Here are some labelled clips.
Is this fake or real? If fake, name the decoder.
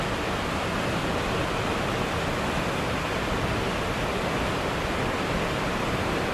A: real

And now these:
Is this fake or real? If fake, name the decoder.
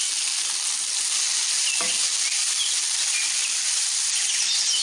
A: real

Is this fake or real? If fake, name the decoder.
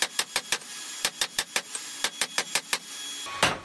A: real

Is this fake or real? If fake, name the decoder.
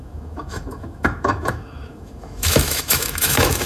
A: fake, autoencoder, DAC-VAE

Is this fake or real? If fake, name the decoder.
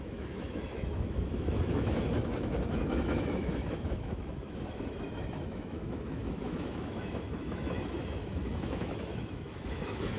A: fake, autoencoder, DAC-VAE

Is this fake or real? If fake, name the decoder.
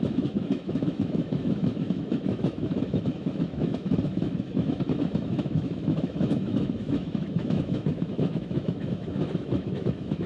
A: fake, autoencoder, DAC-VAE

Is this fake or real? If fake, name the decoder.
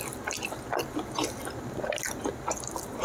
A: real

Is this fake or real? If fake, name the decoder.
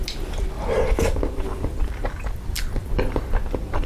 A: real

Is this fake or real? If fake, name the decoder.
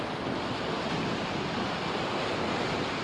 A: real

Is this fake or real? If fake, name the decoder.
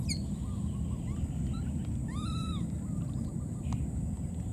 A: real